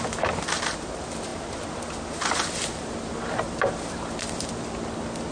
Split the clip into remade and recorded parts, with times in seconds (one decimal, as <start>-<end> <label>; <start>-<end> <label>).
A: 0.0-5.3 recorded